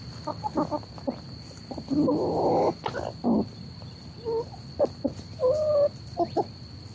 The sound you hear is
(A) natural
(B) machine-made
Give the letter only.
A